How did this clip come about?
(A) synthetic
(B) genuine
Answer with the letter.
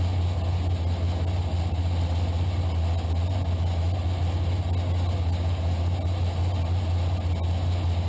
B